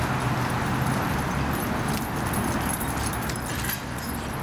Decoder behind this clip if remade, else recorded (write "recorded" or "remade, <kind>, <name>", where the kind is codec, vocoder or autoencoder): recorded